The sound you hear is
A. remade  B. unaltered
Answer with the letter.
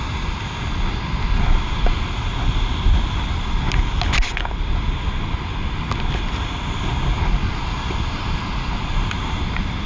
B